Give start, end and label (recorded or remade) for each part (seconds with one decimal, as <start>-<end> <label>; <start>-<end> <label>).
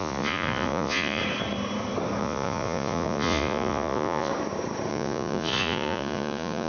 0.0-1.2 remade; 1.2-2.2 recorded; 2.2-4.3 remade; 4.3-4.9 recorded; 4.9-6.7 remade